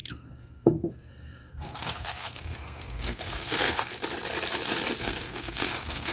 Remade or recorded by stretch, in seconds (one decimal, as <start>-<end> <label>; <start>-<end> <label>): 0.0-3.9 remade; 3.9-5.0 recorded; 5.0-6.1 remade